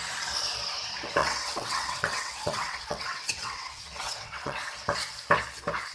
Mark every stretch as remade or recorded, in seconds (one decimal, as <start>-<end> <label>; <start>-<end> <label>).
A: 0.0-1.2 recorded; 1.2-4.7 remade; 4.7-5.9 recorded

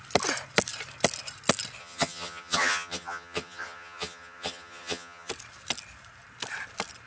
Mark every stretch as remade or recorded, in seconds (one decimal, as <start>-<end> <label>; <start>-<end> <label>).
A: 0.0-1.8 recorded; 1.8-5.3 remade; 5.3-7.1 recorded

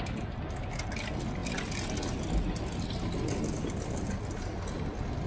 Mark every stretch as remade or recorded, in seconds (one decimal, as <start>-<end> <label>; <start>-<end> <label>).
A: 0.0-5.3 recorded